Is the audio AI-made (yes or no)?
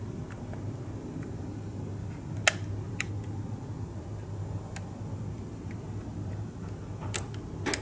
no